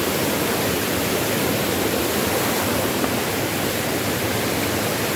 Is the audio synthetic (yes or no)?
no